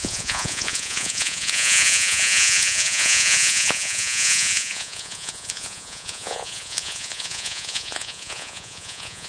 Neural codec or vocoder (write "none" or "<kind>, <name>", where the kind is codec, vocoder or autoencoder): vocoder, Vocos